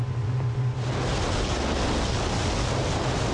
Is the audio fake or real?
real